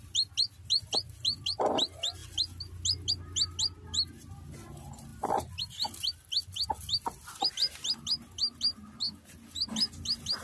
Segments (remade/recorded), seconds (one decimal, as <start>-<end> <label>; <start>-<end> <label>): 0.0-10.4 recorded